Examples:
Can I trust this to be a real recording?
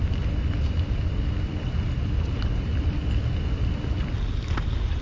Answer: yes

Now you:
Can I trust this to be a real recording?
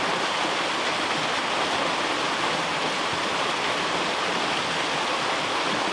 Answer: yes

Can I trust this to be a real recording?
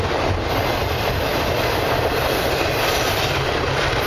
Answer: no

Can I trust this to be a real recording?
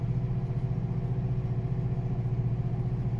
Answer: yes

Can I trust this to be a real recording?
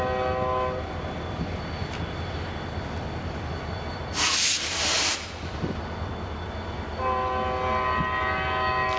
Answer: yes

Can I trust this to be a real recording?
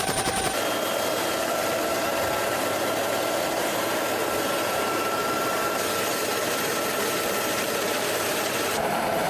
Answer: no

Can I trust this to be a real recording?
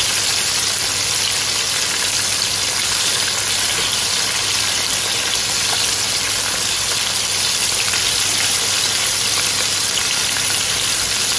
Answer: yes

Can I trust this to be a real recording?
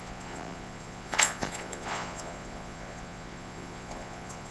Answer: no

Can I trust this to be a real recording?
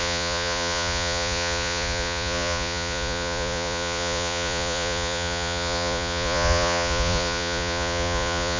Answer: no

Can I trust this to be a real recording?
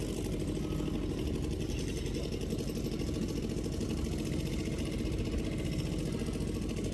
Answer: yes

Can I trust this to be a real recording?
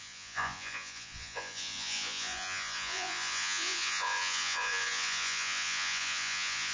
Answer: no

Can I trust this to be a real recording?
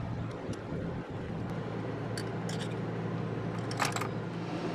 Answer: yes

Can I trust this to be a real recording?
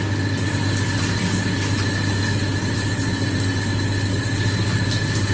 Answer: yes